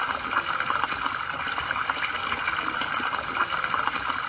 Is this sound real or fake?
real